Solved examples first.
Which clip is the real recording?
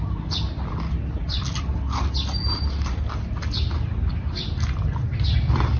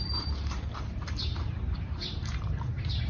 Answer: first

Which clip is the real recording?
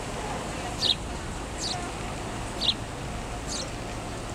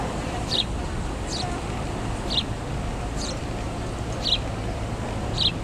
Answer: first